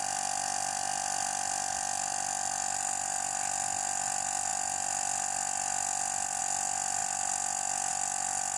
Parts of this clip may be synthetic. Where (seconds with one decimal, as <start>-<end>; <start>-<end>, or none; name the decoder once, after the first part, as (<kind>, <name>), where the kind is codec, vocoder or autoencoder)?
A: none